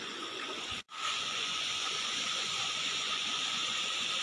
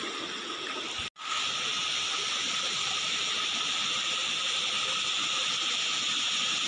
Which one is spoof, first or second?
first